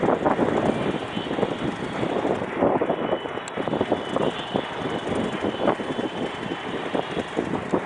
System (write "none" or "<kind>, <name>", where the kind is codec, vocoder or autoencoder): none